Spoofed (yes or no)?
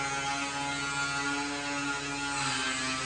no